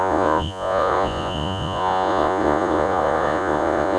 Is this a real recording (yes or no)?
no